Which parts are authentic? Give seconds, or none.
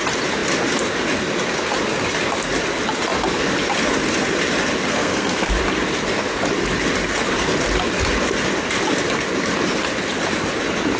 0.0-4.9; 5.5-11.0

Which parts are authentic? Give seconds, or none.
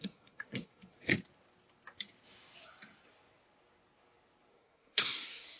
1.1-4.5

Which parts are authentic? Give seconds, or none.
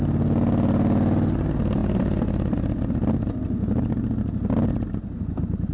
0.0-5.7